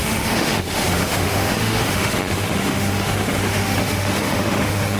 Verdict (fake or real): fake